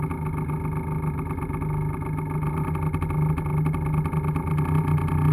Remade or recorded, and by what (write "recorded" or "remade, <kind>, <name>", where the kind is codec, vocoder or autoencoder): recorded